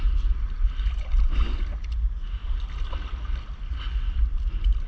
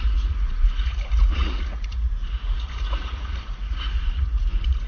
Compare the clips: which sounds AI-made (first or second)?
second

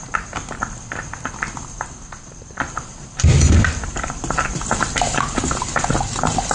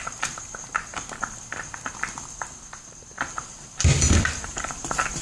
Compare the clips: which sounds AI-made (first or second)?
first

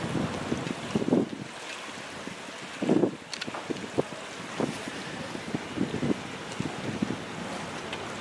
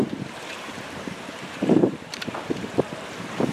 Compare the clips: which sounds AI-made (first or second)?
second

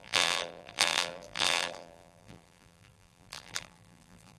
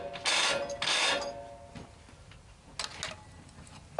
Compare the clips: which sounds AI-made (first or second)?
first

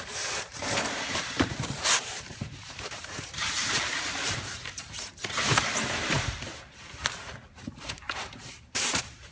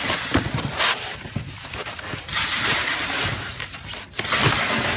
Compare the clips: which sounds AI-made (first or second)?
first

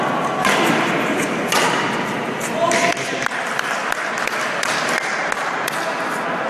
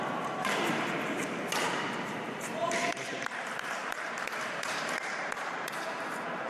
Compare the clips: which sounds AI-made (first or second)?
second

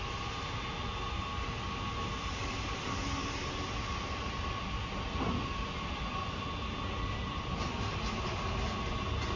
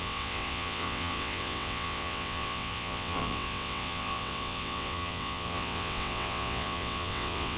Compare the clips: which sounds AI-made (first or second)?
second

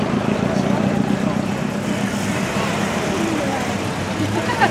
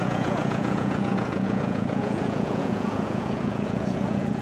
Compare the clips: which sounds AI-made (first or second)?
second